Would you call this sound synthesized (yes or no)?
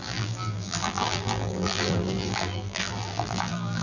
yes